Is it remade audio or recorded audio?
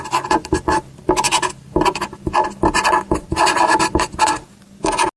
recorded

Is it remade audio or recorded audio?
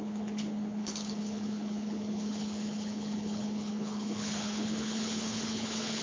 remade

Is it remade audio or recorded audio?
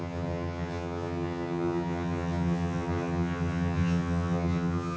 remade